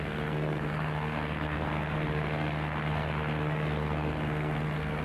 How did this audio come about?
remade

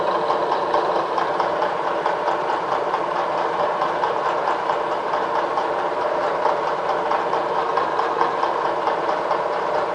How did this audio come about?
remade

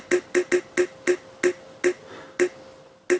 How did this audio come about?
recorded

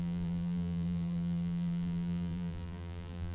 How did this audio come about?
remade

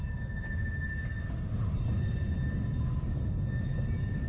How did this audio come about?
recorded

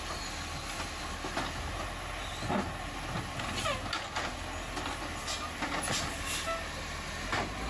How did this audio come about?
recorded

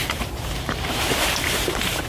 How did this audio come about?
remade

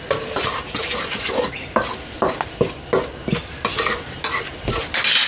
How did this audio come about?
recorded